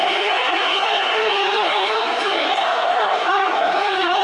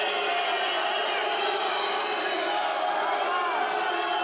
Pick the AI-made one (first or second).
first